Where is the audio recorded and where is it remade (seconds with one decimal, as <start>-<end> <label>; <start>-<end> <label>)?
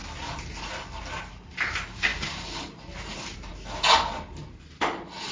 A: 0.0-5.3 recorded